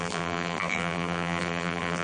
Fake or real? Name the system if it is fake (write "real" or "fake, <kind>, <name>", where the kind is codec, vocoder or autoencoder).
fake, vocoder, BigVGAN v2